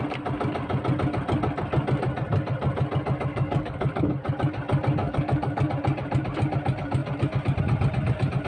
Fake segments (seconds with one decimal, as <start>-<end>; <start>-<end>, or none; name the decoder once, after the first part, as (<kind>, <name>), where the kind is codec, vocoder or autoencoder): 3.3-4.1 (codec, DAC); 5.0-5.7